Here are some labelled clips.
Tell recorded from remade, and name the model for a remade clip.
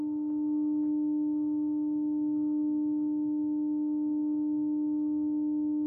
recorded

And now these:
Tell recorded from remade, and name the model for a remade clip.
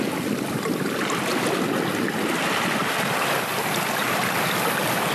recorded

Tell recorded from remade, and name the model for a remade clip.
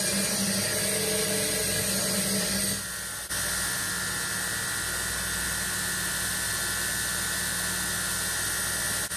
recorded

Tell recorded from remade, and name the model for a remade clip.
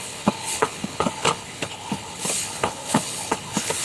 remade, codec, HILCodec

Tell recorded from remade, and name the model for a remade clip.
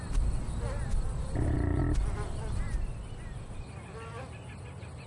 recorded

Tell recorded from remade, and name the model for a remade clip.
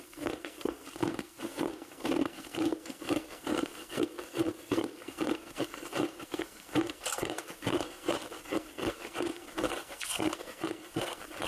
remade, codec, SNAC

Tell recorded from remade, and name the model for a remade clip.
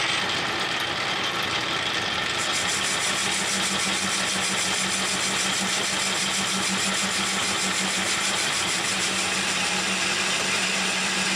recorded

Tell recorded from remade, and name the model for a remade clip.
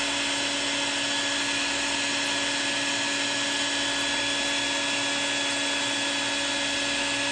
recorded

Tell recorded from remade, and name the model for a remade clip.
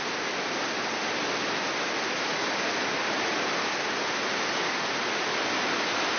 recorded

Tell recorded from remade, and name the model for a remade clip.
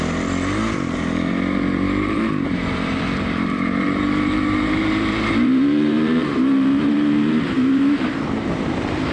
remade, vocoder, BigVGAN v2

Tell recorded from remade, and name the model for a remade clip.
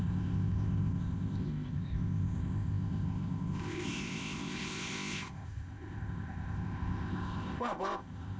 remade, codec, ZipCodec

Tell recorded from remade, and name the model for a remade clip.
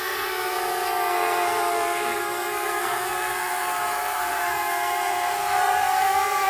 remade, codec, SNAC